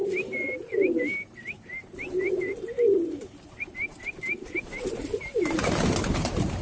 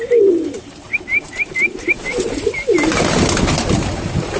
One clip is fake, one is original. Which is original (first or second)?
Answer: second